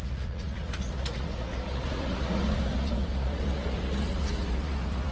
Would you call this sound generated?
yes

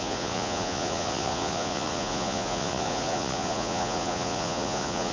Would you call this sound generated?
yes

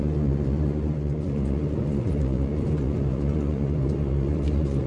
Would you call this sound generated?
yes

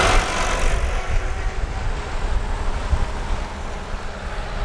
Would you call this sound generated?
no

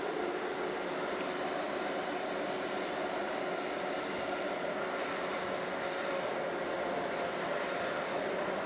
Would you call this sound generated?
no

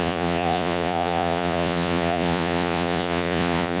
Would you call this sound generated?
yes